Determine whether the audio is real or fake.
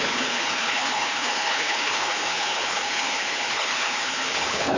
fake